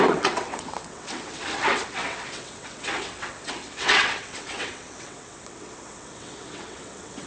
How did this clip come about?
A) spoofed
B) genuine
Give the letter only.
A